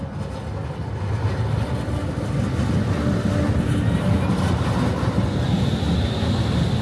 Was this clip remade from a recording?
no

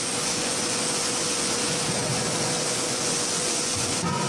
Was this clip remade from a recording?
yes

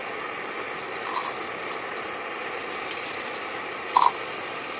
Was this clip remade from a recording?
no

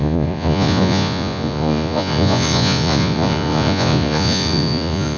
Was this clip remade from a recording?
yes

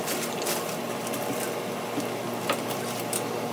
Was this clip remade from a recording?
no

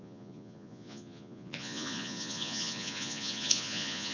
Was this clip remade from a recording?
yes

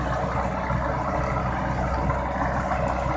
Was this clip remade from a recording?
no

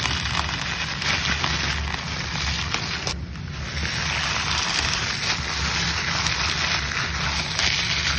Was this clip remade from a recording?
no